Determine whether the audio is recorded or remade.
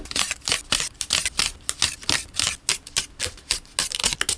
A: recorded